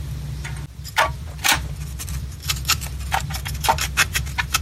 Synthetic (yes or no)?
no